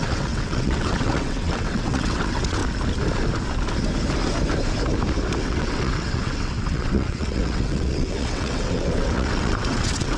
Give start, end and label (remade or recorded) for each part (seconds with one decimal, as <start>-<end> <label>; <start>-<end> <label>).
0.0-2.6 remade; 2.6-5.4 recorded; 5.4-10.2 remade